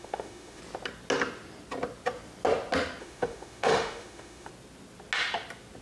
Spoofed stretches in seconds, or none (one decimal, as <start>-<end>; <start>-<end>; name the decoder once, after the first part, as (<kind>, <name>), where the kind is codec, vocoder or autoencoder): 0.0-0.6 (autoencoder, DAC-VAE); 3.0-4.5